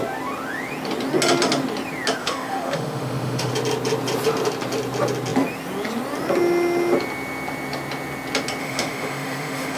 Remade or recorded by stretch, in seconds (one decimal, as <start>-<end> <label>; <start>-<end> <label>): 0.0-2.2 recorded; 2.2-3.5 remade; 3.5-8.6 recorded; 8.6-9.8 remade